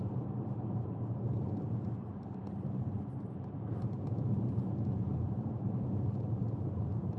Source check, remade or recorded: remade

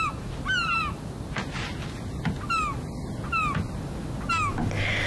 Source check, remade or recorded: recorded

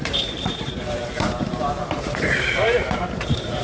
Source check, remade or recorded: remade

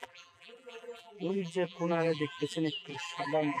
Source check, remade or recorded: remade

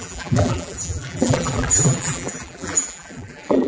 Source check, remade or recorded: remade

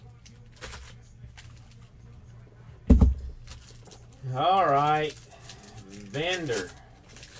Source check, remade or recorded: recorded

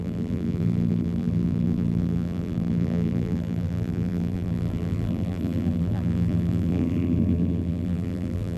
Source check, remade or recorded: remade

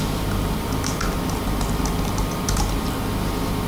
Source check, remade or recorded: recorded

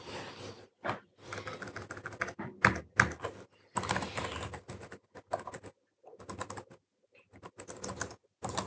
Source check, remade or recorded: recorded